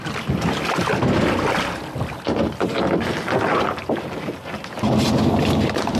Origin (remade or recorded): recorded